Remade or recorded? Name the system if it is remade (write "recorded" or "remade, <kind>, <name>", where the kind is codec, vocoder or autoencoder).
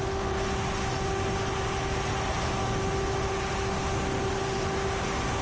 recorded